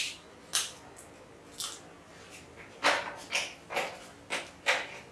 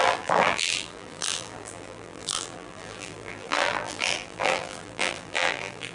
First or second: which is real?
first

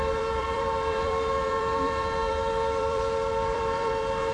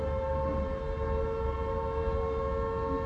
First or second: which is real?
second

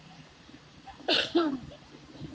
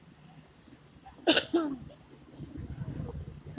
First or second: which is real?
second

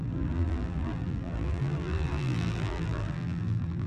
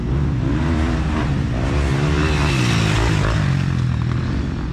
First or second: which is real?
second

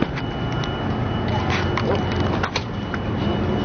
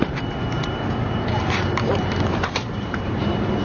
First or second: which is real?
first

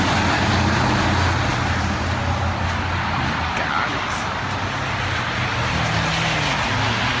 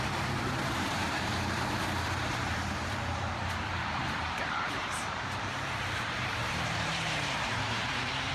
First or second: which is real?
first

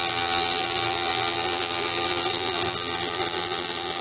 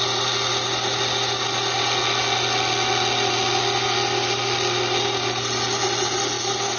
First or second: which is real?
second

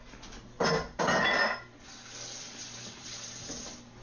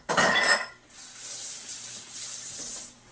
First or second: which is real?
first